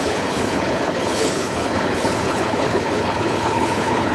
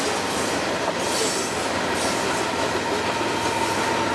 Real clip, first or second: second